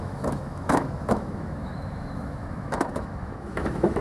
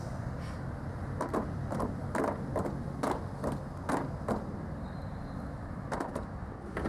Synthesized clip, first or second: first